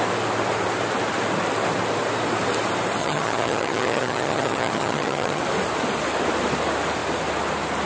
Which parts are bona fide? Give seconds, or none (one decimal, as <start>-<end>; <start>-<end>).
0.0-3.0; 5.4-7.9